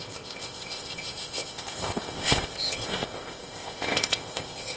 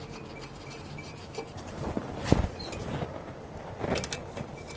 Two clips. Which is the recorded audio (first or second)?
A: second